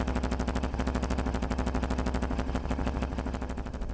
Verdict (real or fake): real